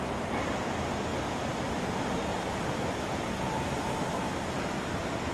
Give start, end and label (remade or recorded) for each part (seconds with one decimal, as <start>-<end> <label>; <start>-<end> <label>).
0.0-1.1 recorded; 1.1-1.8 remade; 1.8-2.3 recorded; 2.3-3.8 remade; 3.8-5.3 recorded

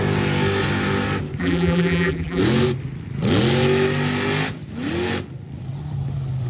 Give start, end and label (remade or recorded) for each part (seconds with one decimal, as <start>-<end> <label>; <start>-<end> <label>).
0.0-1.4 recorded; 1.4-2.4 remade; 2.4-6.5 recorded

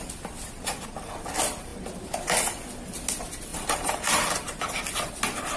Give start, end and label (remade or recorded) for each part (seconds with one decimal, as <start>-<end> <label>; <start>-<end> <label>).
0.0-3.5 recorded; 3.5-4.1 remade; 4.1-5.6 recorded

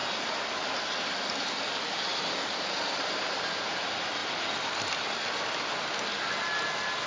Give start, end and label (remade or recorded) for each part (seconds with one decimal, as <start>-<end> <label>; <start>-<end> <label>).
0.0-2.1 recorded; 2.1-3.5 remade; 3.5-7.1 recorded